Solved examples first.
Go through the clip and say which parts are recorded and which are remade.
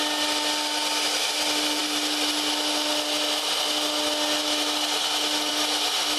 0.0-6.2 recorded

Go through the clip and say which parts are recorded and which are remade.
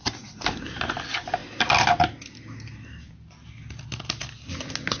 0.0-5.0 recorded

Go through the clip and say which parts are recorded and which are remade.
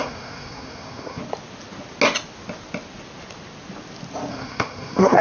0.0-1.2 remade; 1.2-4.3 recorded; 4.3-5.2 remade